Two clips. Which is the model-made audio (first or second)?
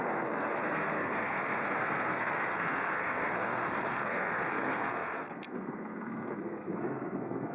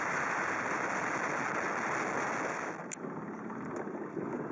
first